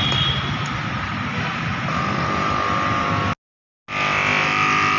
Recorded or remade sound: recorded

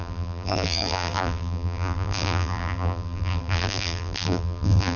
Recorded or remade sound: remade